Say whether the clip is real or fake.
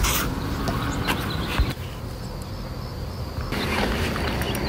real